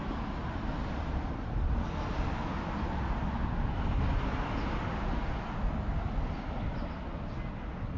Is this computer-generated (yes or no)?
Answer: no